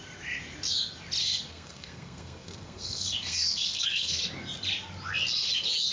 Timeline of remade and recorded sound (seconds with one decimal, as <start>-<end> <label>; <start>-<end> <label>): 0.0-1.2 recorded; 1.2-4.2 remade; 4.2-5.9 recorded